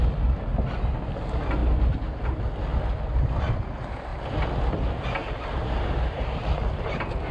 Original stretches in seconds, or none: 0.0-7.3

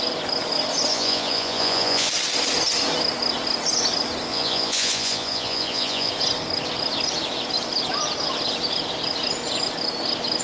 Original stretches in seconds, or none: 0.0-0.9; 2.1-4.3; 6.1-10.4